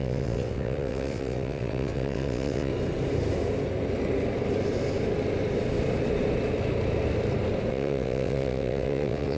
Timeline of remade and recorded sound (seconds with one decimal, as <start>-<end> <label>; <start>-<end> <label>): 0.0-2.7 remade; 2.7-7.7 recorded; 7.7-9.4 remade